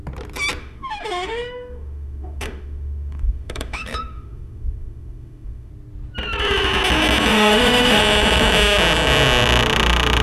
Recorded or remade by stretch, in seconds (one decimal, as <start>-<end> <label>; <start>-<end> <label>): 0.0-0.6 recorded; 0.6-5.7 remade; 5.7-7.3 recorded; 7.3-8.0 remade; 8.0-10.2 recorded